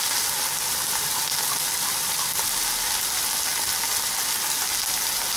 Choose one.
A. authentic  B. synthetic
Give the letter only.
A